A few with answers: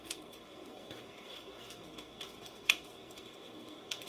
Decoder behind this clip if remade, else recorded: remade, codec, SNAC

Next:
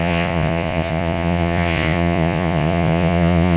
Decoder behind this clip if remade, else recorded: remade, vocoder, Vocos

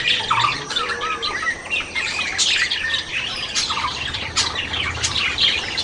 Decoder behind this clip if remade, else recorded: remade, vocoder, BigVGAN v2